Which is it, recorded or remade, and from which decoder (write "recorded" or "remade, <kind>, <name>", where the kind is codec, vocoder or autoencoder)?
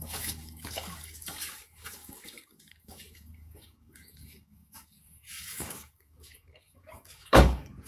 remade, codec, DAC